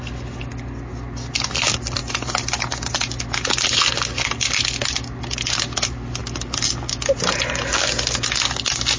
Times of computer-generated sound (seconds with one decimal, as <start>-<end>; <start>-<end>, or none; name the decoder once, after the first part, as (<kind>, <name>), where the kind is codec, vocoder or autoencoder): none